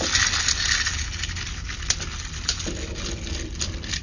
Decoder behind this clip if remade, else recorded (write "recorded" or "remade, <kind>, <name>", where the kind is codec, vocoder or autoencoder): recorded